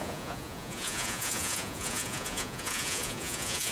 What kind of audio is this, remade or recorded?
remade